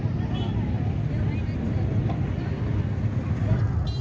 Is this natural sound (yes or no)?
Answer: yes